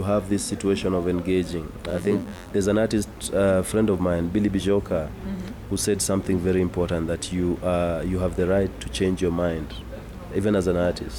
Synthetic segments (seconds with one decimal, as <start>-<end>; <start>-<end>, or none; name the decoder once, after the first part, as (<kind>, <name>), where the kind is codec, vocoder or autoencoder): 1.9-2.5 (vocoder, BigVGAN v2)